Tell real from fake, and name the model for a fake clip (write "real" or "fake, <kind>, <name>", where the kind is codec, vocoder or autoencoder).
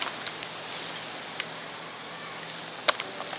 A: real